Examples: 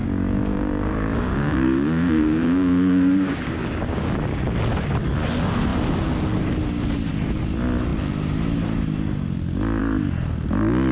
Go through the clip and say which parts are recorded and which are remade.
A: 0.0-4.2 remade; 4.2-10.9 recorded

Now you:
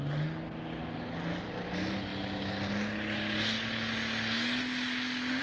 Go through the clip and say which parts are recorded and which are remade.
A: 0.0-5.4 recorded

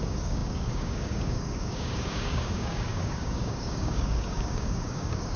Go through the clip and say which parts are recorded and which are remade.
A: 0.0-5.4 remade

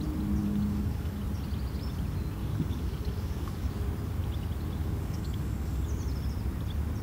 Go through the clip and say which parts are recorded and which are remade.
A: 0.0-0.4 recorded; 0.4-1.2 remade; 1.2-2.4 recorded; 2.4-3.7 remade; 3.7-4.8 recorded; 4.8-5.8 remade; 5.8-7.0 recorded

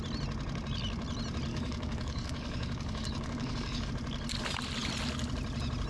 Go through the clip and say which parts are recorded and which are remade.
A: 0.0-1.5 recorded; 1.5-3.9 remade; 3.9-5.9 recorded

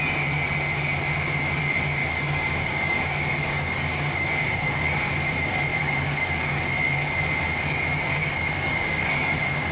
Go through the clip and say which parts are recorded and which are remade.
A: 0.0-2.0 recorded; 2.0-4.8 remade; 4.8-5.7 recorded; 5.7-6.6 remade; 6.6-8.2 recorded; 8.2-9.1 remade; 9.1-9.7 recorded

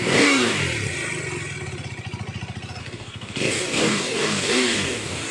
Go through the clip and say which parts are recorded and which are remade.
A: 0.0-0.6 remade; 0.6-2.8 recorded; 2.8-5.3 remade

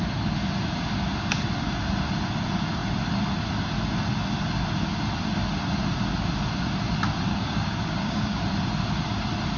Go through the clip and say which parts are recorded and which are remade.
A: 0.0-7.3 recorded; 7.3-8.4 remade; 8.4-9.6 recorded